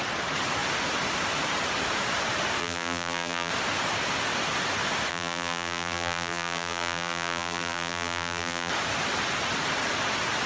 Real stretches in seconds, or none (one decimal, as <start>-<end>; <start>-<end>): 0.0-2.6; 3.5-5.1; 8.7-10.5